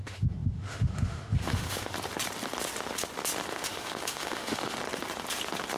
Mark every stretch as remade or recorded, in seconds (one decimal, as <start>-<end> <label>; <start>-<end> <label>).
0.0-1.9 remade; 1.9-3.5 recorded; 3.5-4.8 remade; 4.8-5.8 recorded